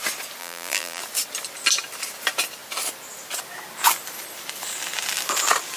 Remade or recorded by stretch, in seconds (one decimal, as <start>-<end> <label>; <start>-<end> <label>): 0.0-0.4 recorded; 0.4-1.0 remade; 1.0-5.8 recorded